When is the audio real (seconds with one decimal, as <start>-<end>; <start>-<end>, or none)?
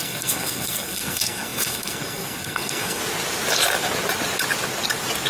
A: 3.0-5.3